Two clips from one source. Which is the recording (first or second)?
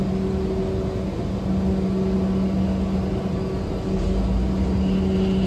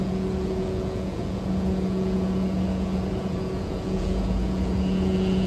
first